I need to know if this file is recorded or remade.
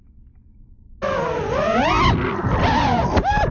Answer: recorded